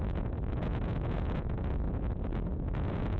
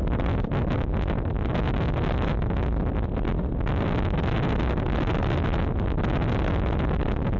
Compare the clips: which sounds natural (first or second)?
second